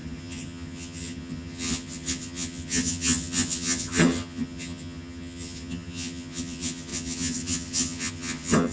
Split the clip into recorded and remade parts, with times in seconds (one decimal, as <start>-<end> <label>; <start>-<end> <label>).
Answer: 0.0-8.7 remade